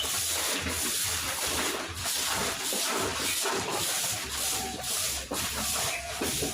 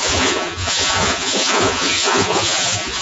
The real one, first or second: first